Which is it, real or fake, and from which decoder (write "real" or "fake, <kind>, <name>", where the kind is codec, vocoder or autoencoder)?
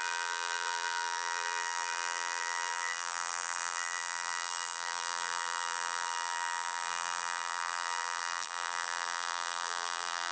fake, vocoder, BigVGAN v2